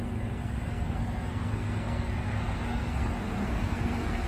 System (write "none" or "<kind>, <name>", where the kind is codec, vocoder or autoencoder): codec, SNAC